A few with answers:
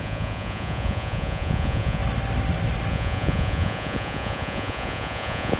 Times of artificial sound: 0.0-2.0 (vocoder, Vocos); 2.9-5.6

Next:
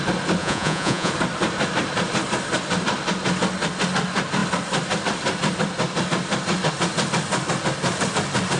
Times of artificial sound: 0.4-1.1 (vocoder, Vocos)

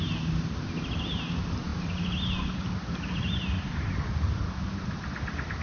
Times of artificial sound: none

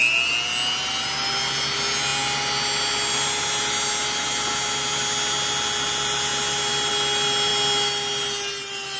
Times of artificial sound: none

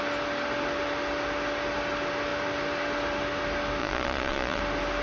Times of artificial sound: 3.8-4.6 (vocoder, Vocos)

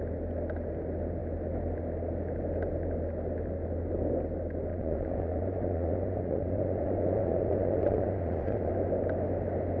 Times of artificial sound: 4.7-8.7 (vocoder, Vocos)